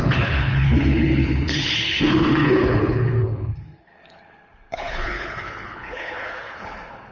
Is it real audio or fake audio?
fake